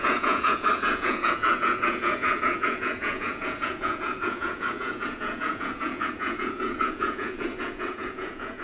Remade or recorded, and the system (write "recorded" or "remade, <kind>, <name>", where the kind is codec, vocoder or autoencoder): remade, vocoder, Vocos